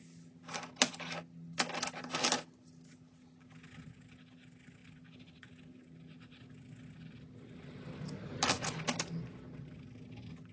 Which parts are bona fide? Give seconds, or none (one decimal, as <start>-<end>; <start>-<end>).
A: 0.0-10.5